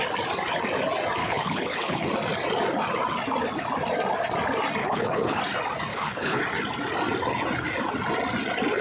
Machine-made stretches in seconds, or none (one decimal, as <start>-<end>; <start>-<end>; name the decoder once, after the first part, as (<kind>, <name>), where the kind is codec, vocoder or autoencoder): 1.2-2.1 (codec, HILCodec); 4.8-5.4; 5.9-6.4